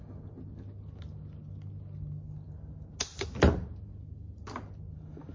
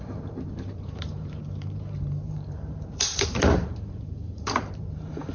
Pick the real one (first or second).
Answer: first